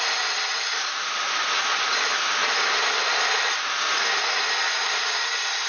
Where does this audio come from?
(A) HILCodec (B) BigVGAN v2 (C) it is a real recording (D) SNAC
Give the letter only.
C